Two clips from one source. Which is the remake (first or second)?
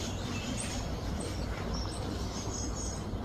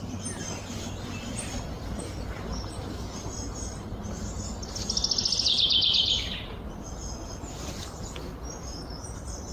first